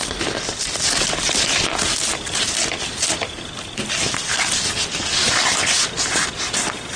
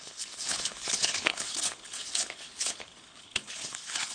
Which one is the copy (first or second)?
second